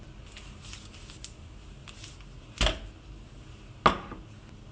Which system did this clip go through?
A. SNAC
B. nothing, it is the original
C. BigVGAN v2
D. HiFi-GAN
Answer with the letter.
B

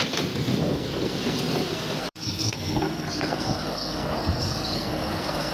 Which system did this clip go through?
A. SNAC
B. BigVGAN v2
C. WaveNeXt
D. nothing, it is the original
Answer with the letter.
A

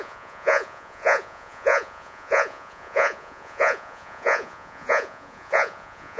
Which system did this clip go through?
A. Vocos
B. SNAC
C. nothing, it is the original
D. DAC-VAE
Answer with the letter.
A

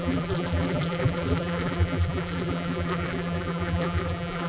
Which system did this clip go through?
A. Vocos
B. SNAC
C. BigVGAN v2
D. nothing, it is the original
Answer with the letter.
C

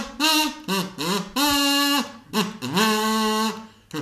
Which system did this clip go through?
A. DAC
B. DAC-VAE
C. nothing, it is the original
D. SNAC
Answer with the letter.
C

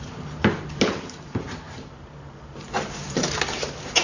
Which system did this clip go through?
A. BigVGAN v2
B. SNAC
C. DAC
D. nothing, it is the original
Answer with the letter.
A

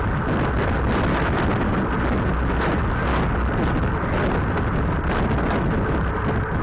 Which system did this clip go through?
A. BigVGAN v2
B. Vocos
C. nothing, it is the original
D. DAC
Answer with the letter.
C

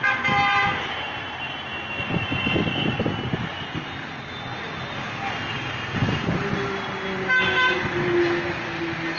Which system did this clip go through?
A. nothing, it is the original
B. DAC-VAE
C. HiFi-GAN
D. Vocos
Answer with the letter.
A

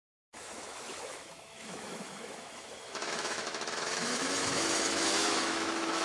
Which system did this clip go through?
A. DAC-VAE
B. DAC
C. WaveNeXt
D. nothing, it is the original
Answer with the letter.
A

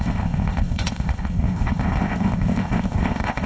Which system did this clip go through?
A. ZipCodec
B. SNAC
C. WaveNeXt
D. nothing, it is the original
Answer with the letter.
A